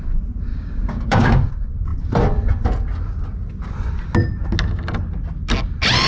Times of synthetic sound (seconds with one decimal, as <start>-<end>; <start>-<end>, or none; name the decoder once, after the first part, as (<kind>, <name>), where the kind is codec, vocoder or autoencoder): 0.5-1.5 (codec, DAC)